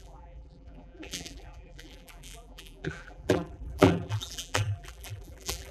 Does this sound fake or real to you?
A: fake